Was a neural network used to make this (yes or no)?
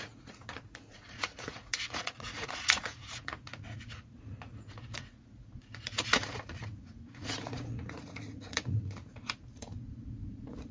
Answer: yes